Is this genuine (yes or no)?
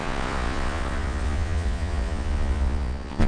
no